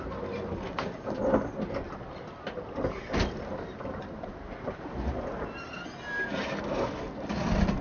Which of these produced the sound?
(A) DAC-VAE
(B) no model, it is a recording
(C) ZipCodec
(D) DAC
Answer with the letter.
B